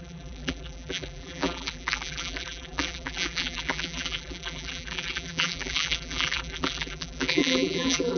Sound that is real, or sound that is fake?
fake